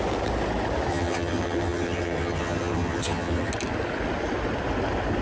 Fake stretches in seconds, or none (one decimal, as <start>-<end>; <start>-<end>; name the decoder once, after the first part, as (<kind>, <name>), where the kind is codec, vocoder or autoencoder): 0.9-3.5 (vocoder, HiFi-GAN)